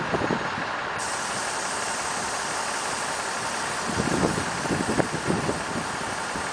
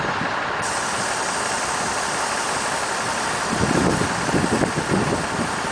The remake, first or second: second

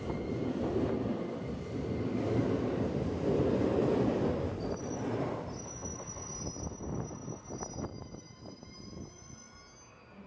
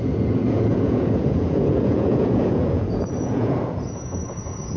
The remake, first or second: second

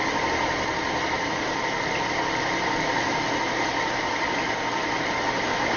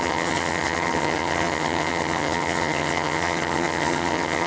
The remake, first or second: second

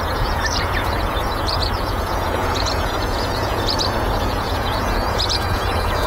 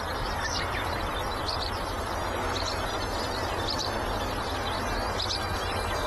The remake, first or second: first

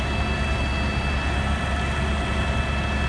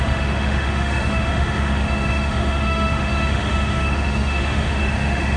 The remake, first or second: second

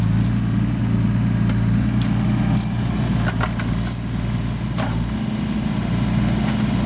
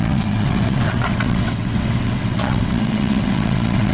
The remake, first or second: second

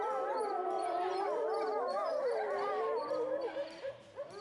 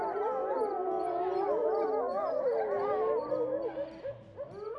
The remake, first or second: first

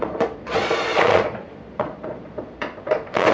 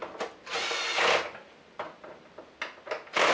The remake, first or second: first